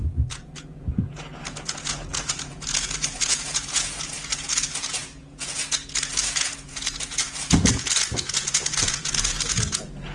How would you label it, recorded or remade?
remade